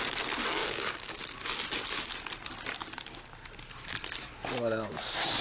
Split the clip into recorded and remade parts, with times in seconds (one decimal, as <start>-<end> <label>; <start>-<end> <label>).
0.0-0.6 recorded; 0.6-1.2 remade; 1.2-5.4 recorded